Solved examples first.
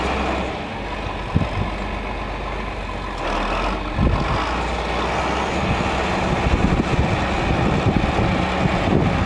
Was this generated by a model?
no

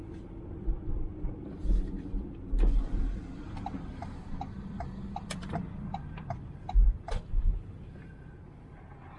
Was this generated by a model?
yes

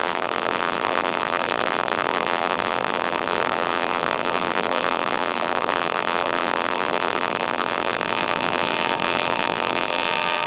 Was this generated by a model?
yes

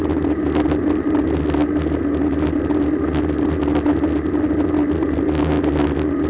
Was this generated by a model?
no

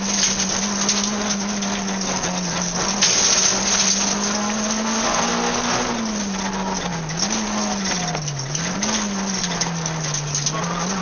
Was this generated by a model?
no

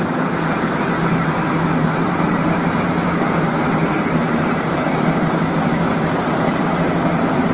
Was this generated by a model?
yes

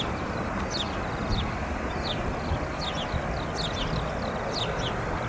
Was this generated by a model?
no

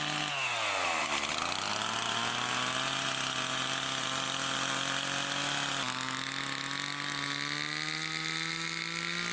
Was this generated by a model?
no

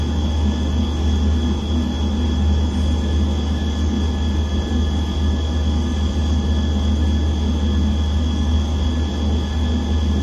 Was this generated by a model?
no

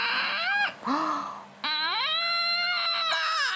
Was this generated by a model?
no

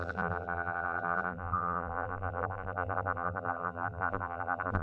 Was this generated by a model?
yes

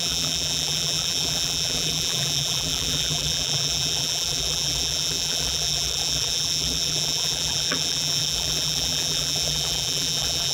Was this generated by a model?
yes